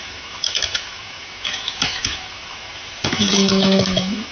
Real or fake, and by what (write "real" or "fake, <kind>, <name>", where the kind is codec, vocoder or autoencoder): fake, autoencoder, DAC-VAE